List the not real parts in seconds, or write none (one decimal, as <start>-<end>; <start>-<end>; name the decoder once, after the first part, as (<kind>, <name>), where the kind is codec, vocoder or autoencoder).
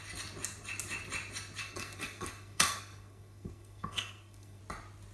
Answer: 1.6-4.6 (codec, SNAC)